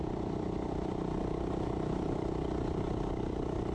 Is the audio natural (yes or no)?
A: yes